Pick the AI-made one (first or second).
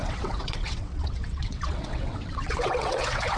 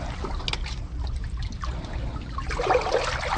first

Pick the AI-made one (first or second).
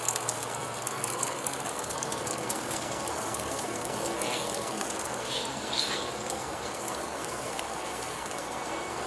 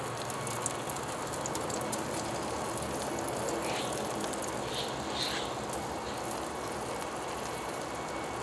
first